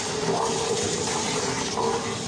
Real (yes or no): yes